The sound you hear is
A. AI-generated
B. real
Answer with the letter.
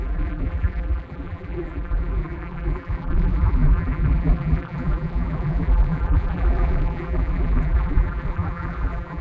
A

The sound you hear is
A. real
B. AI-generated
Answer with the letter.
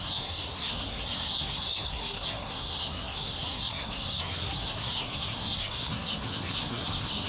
B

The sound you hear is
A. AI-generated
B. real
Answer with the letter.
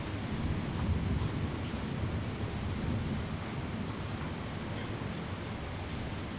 B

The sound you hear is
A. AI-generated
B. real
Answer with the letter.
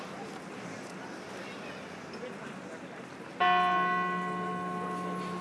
B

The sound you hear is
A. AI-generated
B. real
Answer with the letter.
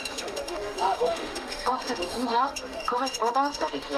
A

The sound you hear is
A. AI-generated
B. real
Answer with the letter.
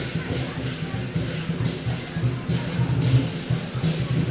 B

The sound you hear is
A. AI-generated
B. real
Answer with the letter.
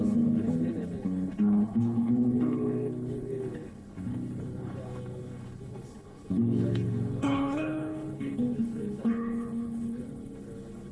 A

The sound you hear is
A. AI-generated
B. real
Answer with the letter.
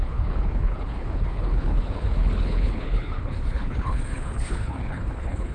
A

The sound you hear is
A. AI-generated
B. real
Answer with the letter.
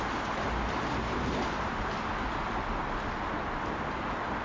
B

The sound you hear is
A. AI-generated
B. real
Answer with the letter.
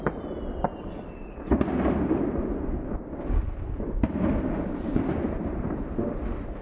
B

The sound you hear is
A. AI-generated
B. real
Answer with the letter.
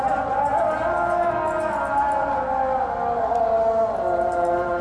B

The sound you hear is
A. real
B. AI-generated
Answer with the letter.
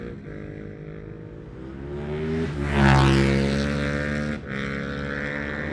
A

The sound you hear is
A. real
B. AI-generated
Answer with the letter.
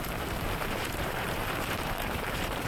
B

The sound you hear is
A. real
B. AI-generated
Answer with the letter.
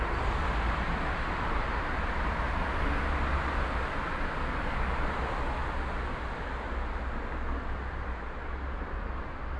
A